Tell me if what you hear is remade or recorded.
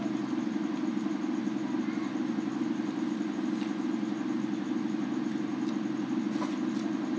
recorded